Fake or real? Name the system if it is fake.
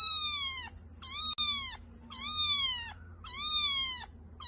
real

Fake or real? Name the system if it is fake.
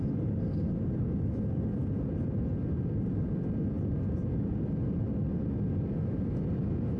real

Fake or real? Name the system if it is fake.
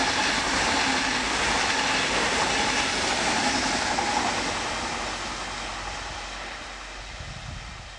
real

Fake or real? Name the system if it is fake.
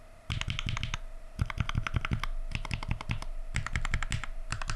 real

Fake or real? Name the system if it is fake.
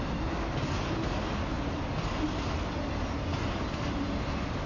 real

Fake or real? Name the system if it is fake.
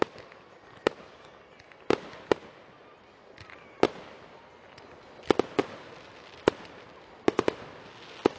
real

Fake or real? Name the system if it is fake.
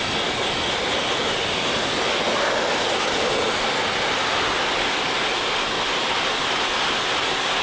real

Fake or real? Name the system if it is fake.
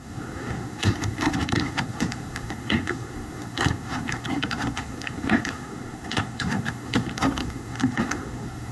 fake, codec, SNAC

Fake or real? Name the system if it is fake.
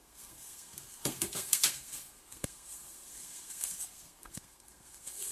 fake, codec, SNAC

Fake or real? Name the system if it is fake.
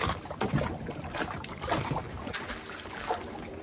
fake, vocoder, BigVGAN v2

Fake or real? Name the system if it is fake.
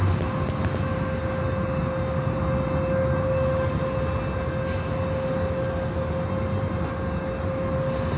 real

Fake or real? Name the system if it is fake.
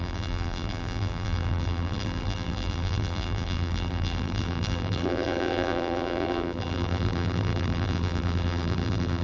fake, vocoder, BigVGAN v2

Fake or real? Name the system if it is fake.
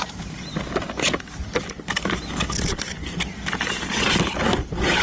real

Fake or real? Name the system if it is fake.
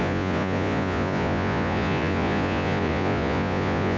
fake, vocoder, Vocos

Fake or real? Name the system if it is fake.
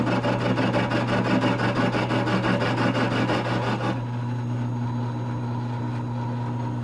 real